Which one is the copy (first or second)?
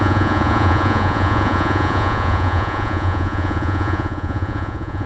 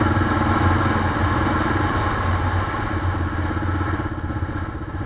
first